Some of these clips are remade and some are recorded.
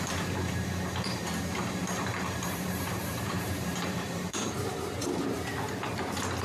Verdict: remade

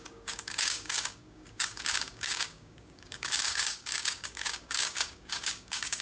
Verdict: remade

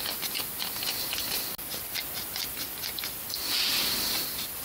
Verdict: recorded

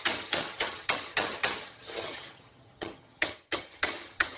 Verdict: remade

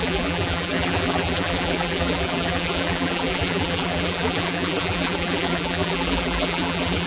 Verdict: remade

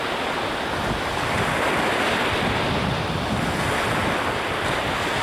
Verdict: recorded